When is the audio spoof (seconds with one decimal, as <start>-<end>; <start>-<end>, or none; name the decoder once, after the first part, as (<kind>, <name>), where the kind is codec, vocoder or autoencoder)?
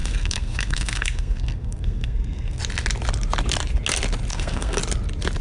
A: 0.0-2.6 (codec, SNAC); 4.3-4.8